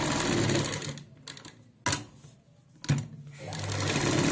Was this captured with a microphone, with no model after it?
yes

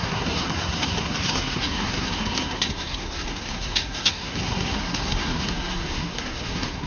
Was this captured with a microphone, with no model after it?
no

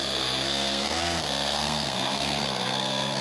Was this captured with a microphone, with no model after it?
no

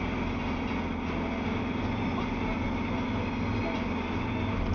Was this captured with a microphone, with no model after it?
yes